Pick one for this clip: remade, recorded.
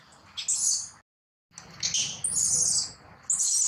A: recorded